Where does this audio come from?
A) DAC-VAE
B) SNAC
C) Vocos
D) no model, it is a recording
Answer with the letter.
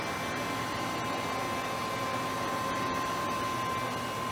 D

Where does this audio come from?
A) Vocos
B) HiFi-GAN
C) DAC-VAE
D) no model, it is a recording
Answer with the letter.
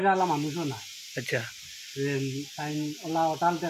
D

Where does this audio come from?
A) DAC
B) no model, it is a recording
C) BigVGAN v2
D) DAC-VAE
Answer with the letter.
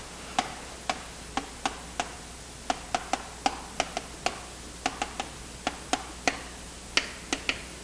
B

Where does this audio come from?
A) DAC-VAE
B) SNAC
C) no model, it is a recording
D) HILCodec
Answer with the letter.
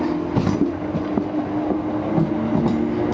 C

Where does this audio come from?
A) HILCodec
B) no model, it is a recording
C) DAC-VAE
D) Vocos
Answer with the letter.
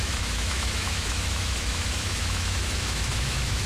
C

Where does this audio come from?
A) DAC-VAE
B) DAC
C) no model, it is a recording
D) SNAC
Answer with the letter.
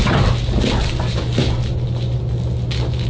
C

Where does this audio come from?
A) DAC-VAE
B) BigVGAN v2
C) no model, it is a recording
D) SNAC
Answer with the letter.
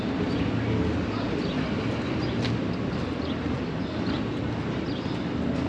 C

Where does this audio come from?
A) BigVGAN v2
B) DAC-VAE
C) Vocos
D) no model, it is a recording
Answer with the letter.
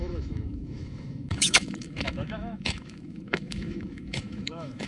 B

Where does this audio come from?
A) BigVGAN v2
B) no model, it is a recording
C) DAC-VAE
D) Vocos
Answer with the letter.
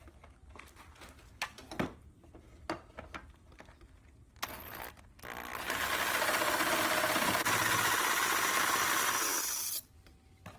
B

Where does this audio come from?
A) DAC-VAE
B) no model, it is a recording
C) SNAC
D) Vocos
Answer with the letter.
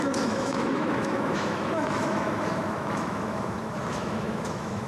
A